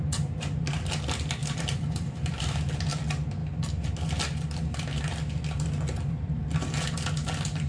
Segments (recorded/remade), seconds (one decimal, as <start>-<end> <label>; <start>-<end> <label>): 0.0-1.4 recorded; 1.4-2.7 remade; 2.7-7.7 recorded